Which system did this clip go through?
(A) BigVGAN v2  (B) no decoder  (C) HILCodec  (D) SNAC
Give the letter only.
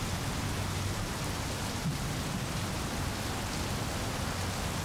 B